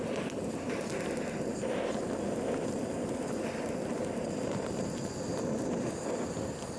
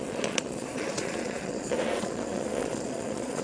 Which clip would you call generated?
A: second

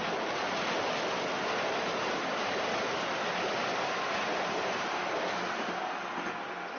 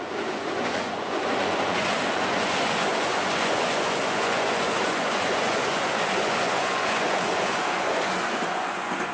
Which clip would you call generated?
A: second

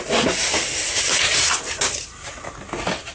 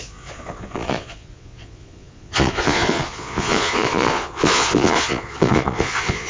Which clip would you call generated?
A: second